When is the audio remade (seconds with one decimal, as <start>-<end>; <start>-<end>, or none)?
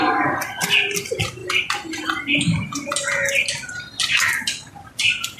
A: 0.0-1.4; 4.2-5.4